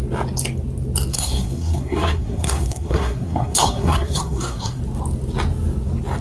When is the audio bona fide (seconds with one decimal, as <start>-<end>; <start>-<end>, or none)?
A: 0.0-1.1; 4.8-6.2